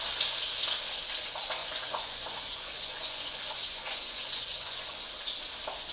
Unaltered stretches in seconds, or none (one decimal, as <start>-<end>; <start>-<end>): 0.0-1.6; 5.1-5.9